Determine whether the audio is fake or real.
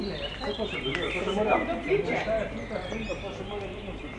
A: real